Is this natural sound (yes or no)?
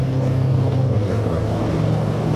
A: no